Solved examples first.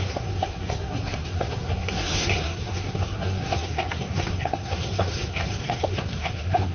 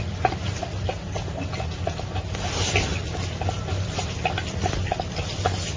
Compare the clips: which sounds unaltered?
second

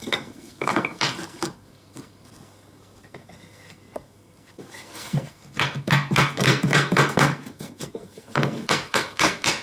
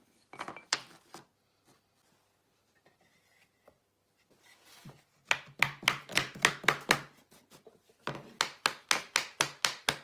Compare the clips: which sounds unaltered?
second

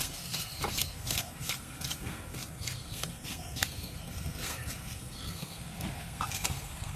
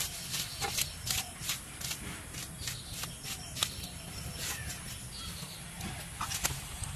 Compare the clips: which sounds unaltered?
second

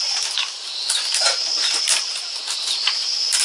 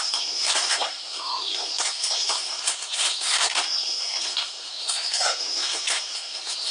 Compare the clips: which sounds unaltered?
first